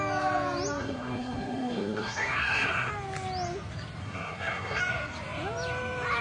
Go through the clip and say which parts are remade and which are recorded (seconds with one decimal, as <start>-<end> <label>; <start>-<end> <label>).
0.0-0.8 recorded; 0.8-2.9 remade; 2.9-4.0 recorded; 4.0-4.8 remade; 4.8-6.2 recorded